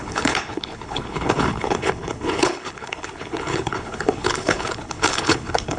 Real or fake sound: fake